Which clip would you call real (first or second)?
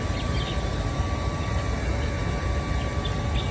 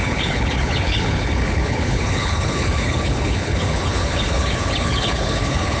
first